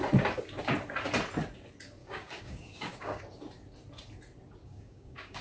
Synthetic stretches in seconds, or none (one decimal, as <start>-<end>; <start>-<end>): 2.0-3.2; 4.6-5.4